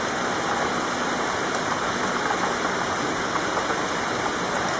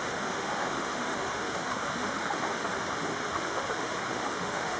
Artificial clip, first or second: second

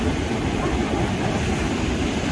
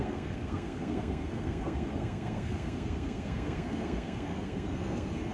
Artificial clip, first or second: second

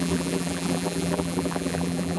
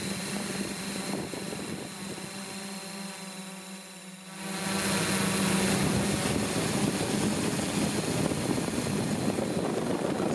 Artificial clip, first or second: first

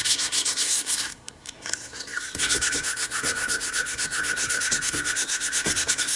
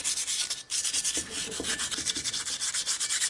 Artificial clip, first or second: first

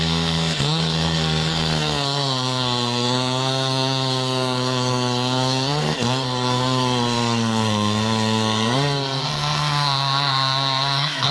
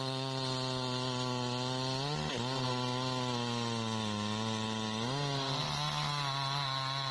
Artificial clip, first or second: first